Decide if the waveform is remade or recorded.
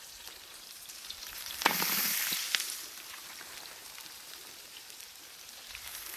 remade